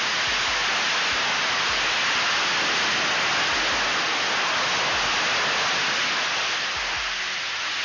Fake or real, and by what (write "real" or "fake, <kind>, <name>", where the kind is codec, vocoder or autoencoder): real